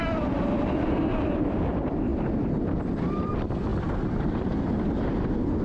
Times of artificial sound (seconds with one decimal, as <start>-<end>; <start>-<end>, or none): 0.0-1.7; 2.1-3.3; 3.7-4.6